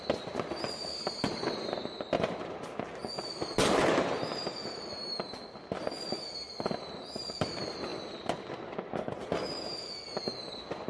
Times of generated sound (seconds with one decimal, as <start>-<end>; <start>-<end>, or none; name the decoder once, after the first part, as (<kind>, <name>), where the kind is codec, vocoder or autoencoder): none